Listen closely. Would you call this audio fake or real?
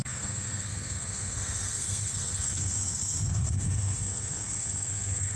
fake